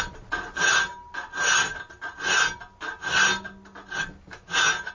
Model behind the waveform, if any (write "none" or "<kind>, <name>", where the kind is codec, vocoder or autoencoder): none